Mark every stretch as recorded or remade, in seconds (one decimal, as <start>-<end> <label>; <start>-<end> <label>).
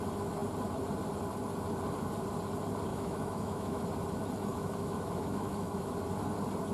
0.0-2.9 recorded; 2.9-3.8 remade; 3.8-4.5 recorded; 4.5-5.9 remade; 5.9-6.7 recorded